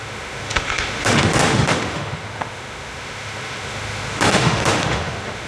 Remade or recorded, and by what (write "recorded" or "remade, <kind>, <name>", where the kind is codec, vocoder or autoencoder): remade, autoencoder, DAC-VAE